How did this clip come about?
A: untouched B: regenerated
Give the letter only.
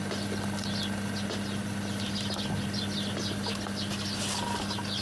A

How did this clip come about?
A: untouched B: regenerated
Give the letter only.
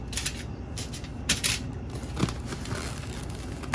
A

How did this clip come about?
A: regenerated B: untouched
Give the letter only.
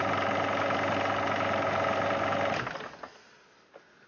B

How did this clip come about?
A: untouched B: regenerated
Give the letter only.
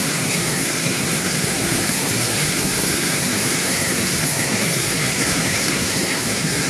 B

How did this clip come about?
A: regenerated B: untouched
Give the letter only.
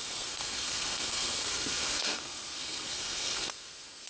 A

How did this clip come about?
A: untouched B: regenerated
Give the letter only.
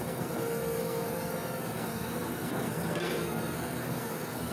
B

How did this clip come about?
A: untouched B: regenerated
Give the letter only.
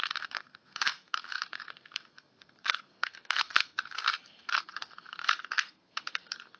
B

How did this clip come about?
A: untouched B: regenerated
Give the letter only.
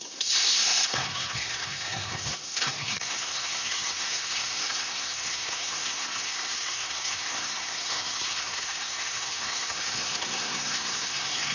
B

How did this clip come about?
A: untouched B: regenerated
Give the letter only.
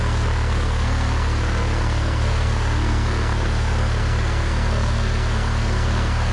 B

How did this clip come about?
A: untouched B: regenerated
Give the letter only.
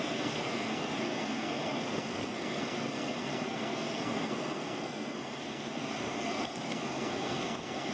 B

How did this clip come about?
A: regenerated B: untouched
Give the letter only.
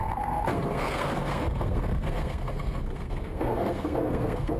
A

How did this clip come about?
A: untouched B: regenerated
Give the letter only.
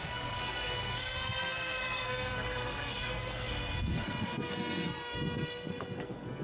B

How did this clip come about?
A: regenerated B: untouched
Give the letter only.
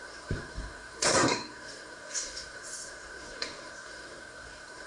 A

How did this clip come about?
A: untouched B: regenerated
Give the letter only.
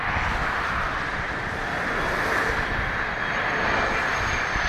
A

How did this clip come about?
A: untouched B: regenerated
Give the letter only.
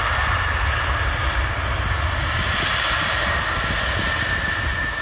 A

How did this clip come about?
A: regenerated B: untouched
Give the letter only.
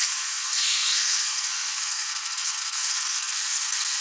A